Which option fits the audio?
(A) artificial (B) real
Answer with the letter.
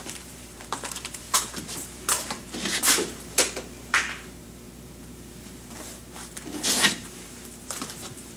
A